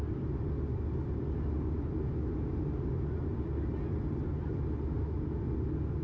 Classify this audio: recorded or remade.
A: recorded